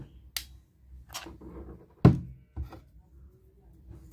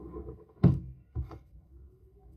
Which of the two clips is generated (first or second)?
second